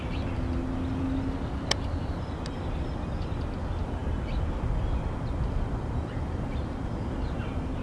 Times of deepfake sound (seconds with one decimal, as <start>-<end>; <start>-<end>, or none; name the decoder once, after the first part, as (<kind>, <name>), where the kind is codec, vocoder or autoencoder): none